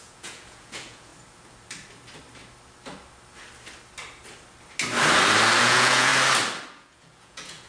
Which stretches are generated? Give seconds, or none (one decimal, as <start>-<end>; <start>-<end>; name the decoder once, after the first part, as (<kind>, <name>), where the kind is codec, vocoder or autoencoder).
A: 0.0-1.1 (vocoder, Vocos); 5.6-6.1; 6.7-7.7